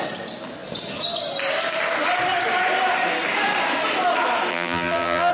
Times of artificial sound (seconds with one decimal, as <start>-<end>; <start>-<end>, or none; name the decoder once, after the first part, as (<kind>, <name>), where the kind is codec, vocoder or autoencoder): 4.5-5.3 (vocoder, BigVGAN v2)